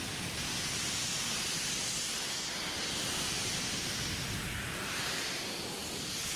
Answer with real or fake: real